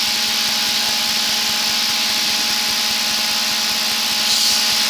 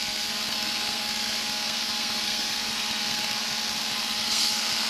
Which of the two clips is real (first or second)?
first